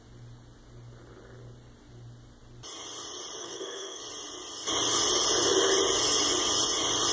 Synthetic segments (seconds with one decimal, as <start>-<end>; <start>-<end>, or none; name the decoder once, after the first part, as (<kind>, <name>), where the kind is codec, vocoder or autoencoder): 3.4-4.0 (codec, SNAC)